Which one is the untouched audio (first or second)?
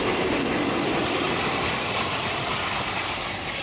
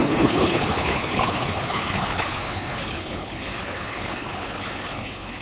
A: first